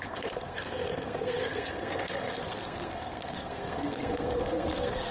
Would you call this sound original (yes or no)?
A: no